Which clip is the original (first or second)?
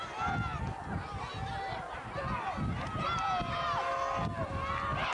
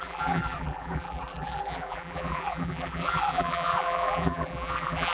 first